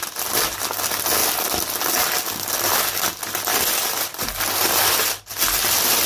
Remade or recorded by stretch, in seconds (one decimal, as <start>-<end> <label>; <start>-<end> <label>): 0.0-3.5 recorded; 3.5-5.4 remade; 5.4-6.1 recorded